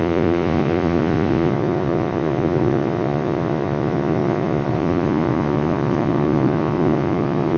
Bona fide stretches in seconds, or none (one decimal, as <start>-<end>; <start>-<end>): none